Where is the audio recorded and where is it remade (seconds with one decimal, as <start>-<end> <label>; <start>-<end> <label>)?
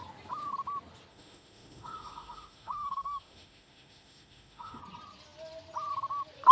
0.0-1.1 recorded; 1.1-4.8 remade; 4.8-6.5 recorded